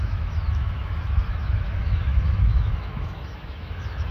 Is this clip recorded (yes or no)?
no